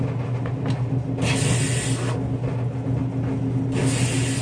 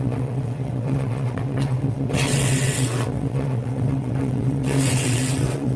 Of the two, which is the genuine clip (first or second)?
first